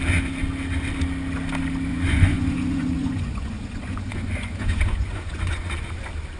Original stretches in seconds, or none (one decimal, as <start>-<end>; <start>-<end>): 0.0-1.9; 5.7-6.4